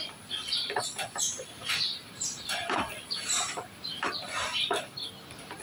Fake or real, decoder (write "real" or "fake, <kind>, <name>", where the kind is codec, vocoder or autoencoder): real